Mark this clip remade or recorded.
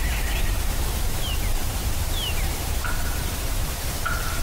remade